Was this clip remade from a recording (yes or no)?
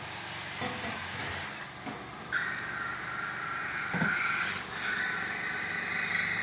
yes